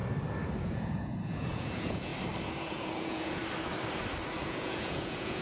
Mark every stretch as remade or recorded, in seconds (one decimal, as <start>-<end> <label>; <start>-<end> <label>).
0.0-0.6 recorded; 0.6-2.1 remade; 2.1-2.7 recorded; 2.7-3.4 remade; 3.4-4.4 recorded; 4.4-5.4 remade